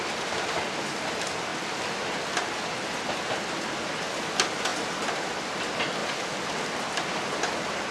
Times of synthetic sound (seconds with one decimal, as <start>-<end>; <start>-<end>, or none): 1.5-2.6